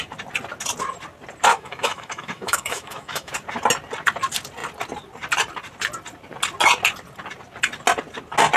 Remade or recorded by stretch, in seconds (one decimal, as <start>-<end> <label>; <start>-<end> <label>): 0.0-1.5 recorded; 1.5-3.3 remade; 3.3-8.6 recorded